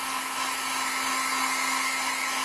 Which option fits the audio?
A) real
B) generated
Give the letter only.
A